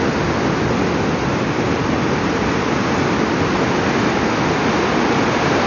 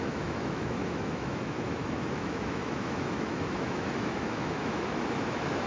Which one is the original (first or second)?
first